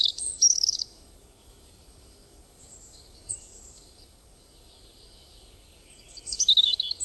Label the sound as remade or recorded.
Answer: remade